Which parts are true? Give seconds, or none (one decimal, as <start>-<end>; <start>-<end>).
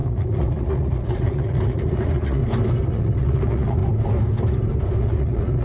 2.4-2.9; 3.8-5.0